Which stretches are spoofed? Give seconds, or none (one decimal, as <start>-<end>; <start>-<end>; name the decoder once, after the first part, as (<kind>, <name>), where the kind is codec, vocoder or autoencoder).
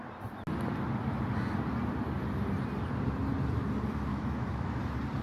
4.1-4.8 (autoencoder, DAC-VAE)